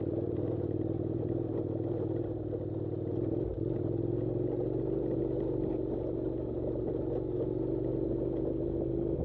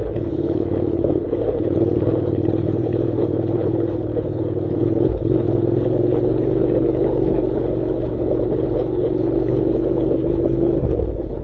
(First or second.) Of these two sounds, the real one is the first